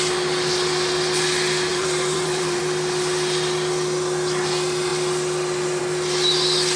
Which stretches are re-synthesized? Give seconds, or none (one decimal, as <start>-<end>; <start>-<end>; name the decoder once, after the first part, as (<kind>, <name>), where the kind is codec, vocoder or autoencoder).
1.7-2.6 (vocoder, BigVGAN v2)